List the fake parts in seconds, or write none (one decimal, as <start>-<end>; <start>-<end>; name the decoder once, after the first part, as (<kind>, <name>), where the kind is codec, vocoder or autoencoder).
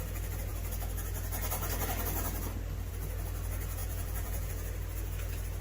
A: 3.8-4.5 (vocoder, BigVGAN v2)